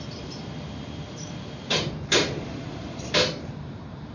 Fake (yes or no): yes